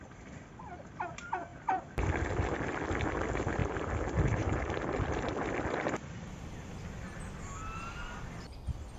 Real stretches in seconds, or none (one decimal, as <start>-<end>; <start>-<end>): 0.0-9.0